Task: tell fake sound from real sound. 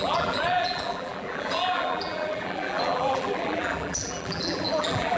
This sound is fake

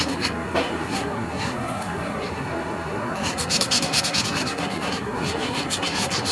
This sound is fake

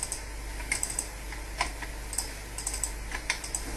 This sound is real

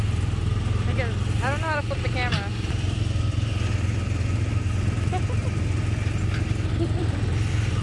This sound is real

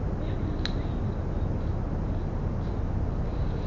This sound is real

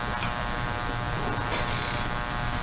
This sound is real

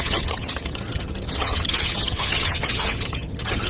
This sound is fake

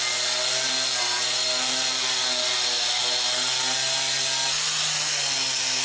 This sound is real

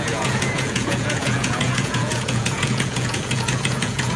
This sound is fake